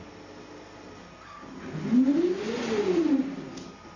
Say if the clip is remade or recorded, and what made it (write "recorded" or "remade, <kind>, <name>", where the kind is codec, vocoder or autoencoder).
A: recorded